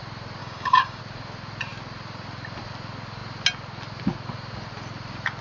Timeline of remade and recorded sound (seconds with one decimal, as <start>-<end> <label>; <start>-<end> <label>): 0.0-0.4 recorded; 0.4-1.0 remade; 1.0-5.4 recorded